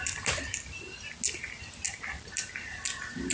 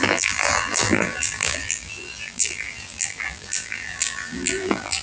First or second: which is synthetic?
second